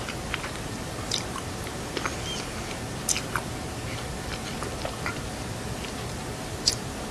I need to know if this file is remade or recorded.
recorded